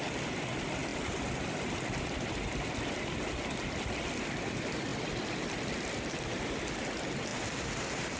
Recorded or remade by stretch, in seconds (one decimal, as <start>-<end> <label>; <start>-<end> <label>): 0.0-8.2 recorded